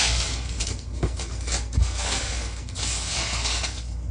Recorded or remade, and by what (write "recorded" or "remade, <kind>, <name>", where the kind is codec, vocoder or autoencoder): remade, codec, SNAC